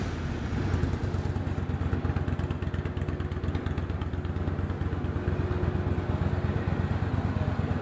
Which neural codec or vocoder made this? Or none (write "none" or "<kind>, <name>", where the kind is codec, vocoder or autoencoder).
none